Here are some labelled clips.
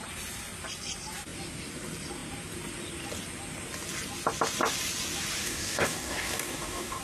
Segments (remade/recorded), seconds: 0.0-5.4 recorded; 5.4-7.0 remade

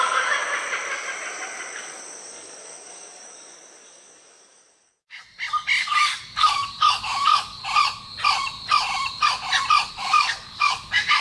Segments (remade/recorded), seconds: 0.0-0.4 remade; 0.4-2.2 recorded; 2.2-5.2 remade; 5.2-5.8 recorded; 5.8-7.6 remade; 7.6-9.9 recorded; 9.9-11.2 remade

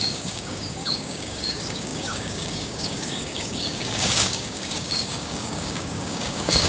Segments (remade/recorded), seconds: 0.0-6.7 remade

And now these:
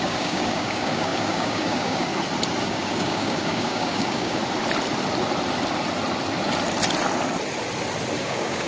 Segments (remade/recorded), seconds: 0.0-2.1 remade; 2.1-2.6 recorded; 2.6-4.4 remade; 4.4-8.2 recorded; 8.2-8.7 remade

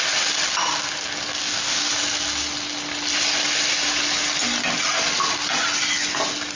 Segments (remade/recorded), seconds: 0.0-1.4 recorded; 1.4-1.9 remade; 1.9-6.6 recorded

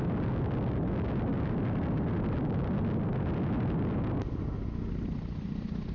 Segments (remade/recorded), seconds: 0.0-5.9 recorded

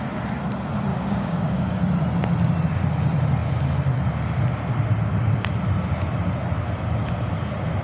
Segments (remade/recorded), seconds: 0.0-0.9 recorded; 0.9-1.8 remade; 1.8-7.8 recorded

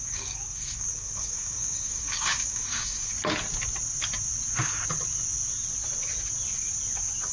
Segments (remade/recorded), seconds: 0.0-3.1 remade; 3.1-7.3 recorded